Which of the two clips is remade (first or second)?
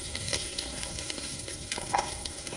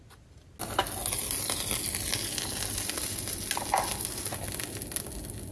first